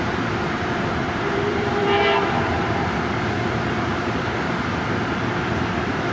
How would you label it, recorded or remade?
remade